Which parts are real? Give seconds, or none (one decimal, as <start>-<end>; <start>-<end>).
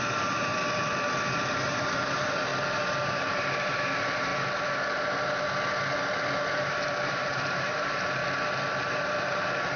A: 0.5-1.5; 2.5-3.1; 4.3-6.6; 8.2-9.8